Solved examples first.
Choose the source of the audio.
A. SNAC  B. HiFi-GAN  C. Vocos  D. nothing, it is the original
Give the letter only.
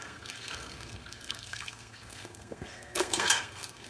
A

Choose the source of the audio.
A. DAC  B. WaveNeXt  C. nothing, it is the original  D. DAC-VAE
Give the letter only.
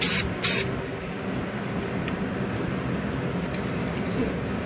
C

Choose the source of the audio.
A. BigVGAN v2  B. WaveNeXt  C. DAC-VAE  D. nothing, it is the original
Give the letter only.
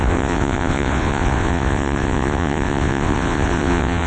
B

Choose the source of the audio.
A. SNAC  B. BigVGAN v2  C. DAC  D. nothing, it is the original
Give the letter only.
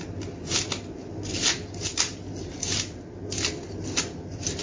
D